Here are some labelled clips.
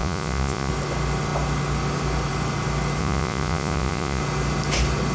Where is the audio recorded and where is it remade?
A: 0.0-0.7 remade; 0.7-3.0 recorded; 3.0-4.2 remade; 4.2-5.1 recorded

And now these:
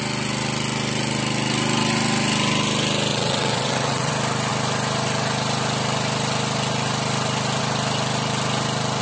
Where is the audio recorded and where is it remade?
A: 0.0-3.1 recorded; 3.1-4.1 remade; 4.1-9.0 recorded

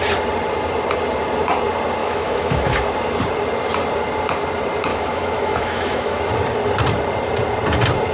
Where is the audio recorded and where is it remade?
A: 0.0-2.0 recorded; 2.0-2.8 remade; 2.8-4.9 recorded; 4.9-6.3 remade; 6.3-8.1 recorded

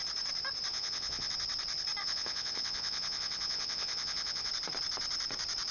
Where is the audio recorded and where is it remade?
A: 0.0-0.7 recorded; 0.7-1.3 remade; 1.3-2.0 recorded; 2.0-4.5 remade; 4.5-5.7 recorded

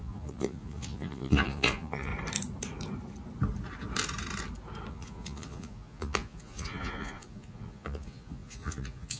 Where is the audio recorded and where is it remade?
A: 0.0-2.1 remade; 2.1-4.9 recorded; 4.9-9.2 remade

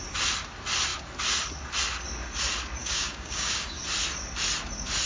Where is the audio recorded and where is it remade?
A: 0.0-2.8 recorded; 2.8-3.8 remade; 3.8-5.1 recorded

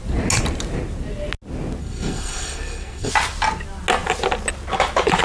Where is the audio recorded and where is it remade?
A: 0.0-1.8 recorded; 1.8-3.1 remade; 3.1-5.2 recorded